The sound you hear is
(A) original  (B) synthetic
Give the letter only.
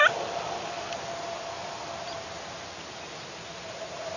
A